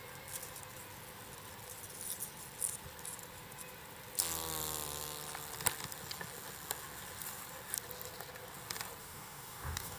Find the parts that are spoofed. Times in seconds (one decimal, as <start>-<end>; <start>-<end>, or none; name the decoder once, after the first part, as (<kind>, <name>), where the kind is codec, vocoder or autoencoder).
9.0-10.0 (codec, DAC)